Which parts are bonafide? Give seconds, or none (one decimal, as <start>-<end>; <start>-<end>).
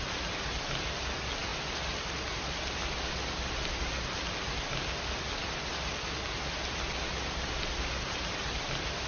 0.0-9.1